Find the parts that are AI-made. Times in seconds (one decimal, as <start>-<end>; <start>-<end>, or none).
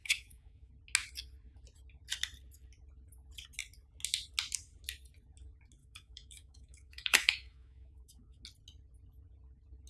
0.0-0.7; 5.8-8.4